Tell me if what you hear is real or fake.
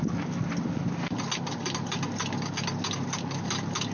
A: real